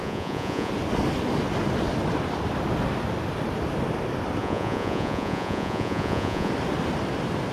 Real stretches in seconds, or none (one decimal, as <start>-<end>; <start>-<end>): 0.7-4.4; 6.5-7.5

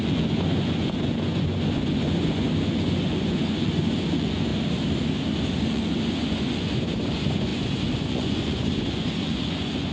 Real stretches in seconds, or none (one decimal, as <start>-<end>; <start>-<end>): 4.5-5.7